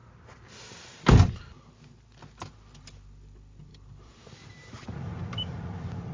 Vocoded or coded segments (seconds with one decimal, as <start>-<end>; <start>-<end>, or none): 3.7-6.1